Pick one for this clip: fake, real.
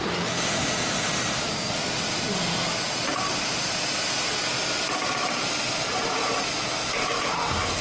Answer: real